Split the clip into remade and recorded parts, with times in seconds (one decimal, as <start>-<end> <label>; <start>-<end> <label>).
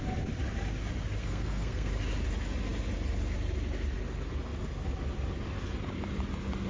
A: 0.0-1.2 recorded; 1.2-1.9 remade; 1.9-6.7 recorded